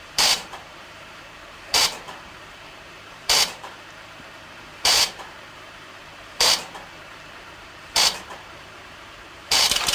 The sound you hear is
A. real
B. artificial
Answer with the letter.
B